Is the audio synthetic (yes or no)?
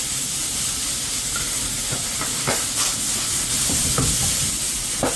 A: yes